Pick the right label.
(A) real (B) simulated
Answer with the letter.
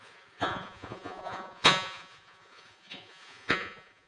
B